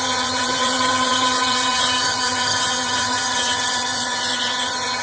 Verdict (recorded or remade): remade